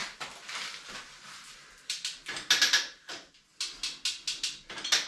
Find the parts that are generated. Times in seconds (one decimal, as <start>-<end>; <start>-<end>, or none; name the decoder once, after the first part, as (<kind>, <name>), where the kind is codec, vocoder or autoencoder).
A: none